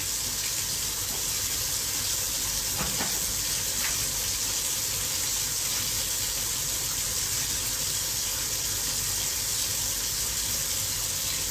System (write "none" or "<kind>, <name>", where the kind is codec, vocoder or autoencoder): none